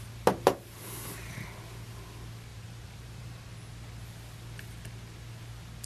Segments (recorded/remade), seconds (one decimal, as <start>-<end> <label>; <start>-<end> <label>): 0.0-2.5 recorded; 2.5-3.5 remade; 3.5-5.9 recorded